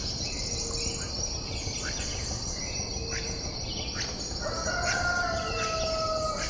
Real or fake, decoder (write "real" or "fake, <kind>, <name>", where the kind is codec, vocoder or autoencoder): real